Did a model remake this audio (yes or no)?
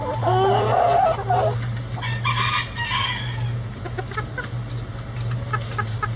no